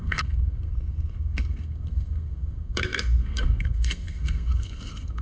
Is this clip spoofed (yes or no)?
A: yes